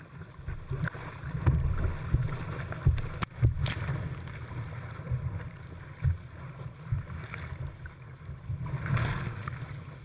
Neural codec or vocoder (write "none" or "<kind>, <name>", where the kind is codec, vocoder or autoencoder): none